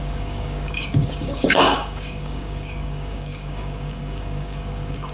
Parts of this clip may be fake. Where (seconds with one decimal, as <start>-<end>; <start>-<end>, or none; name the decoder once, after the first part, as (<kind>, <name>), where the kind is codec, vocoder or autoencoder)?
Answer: 0.0-5.1 (codec, DAC)

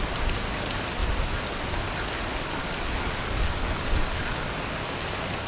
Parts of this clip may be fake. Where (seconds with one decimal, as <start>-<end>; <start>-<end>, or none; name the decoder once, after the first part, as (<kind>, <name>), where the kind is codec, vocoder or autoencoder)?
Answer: 2.6-4.5 (codec, DAC)

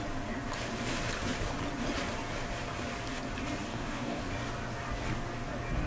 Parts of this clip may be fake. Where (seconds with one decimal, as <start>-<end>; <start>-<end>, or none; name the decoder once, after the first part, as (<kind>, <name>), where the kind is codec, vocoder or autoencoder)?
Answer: 3.7-4.2 (codec, DAC)

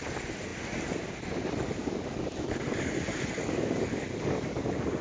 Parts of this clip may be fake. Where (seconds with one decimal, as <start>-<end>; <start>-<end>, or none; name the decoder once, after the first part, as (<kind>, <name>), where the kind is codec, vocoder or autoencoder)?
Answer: 1.8-2.9 (codec, DAC); 3.4-4.6

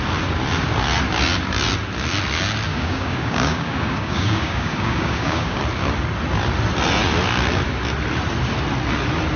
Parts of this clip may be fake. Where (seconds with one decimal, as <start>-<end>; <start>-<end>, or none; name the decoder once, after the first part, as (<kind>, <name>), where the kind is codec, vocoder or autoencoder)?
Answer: 2.7-5.6 (codec, DAC)